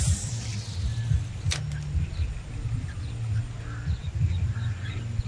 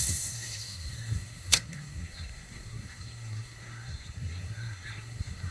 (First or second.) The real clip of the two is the first